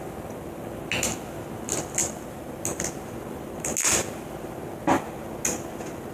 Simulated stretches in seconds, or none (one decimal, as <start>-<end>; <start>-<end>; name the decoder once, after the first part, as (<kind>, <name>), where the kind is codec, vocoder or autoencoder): 2.0-2.6 (vocoder, BigVGAN v2)